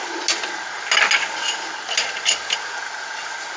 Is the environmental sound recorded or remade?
recorded